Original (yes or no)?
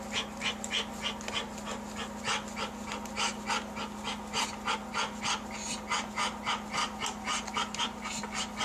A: yes